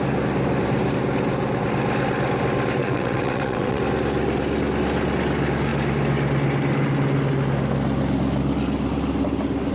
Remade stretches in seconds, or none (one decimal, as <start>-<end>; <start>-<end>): 2.8-3.8

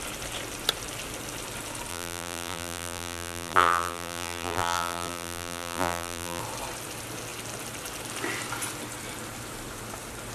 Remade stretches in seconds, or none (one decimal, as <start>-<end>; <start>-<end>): 1.9-6.4

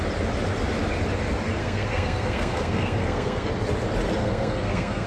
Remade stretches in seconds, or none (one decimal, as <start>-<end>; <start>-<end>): 1.6-3.5; 4.2-5.1

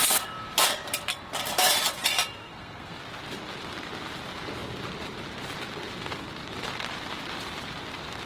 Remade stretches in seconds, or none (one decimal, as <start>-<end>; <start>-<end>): 2.4-3.0